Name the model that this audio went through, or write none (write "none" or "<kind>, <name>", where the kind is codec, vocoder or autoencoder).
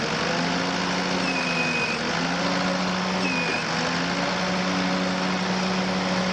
none